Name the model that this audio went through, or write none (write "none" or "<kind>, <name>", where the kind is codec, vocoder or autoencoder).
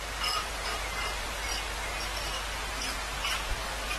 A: none